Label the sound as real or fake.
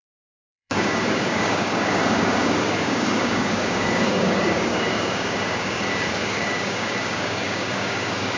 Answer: fake